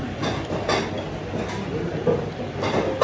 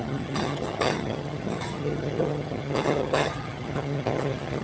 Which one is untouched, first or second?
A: first